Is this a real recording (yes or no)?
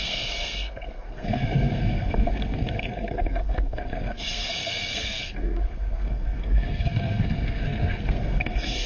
no